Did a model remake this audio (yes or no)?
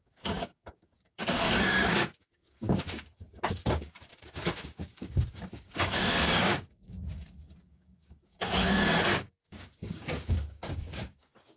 yes